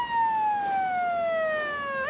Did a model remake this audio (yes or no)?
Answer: no